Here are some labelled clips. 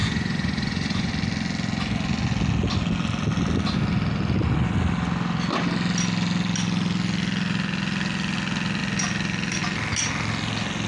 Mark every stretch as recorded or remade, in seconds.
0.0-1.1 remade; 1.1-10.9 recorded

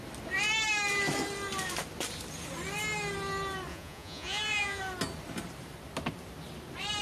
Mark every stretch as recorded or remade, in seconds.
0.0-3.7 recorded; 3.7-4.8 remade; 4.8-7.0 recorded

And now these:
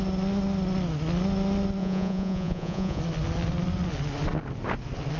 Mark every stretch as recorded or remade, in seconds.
0.0-1.8 recorded; 1.8-3.0 remade; 3.0-5.2 recorded

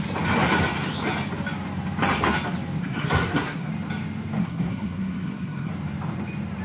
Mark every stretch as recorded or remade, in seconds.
0.0-2.8 recorded; 2.8-3.7 remade; 3.7-4.4 recorded; 4.4-5.7 remade; 5.7-6.6 recorded

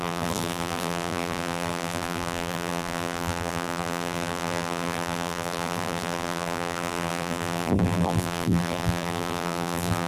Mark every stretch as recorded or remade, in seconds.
0.0-10.1 remade

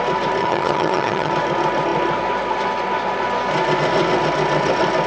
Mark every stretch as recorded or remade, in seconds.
0.0-0.4 recorded; 0.4-1.3 remade; 1.3-5.1 recorded

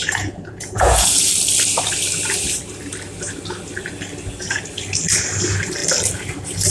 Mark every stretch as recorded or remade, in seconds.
0.0-1.3 remade; 1.3-6.7 recorded